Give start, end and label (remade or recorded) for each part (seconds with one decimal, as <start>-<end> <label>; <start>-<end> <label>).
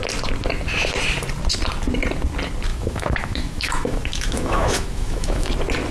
0.0-2.7 recorded; 2.7-5.5 remade; 5.5-5.9 recorded